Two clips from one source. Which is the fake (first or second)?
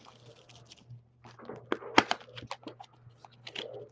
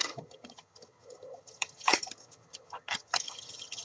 second